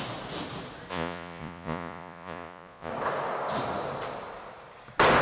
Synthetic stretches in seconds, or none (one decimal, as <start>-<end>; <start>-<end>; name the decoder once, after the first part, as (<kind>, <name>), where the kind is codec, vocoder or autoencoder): 0.9-2.9 (vocoder, Vocos)